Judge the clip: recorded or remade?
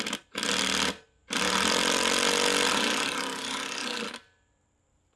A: recorded